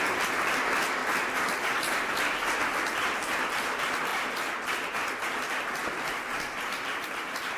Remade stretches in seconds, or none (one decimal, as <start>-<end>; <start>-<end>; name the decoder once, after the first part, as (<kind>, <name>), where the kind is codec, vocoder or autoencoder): none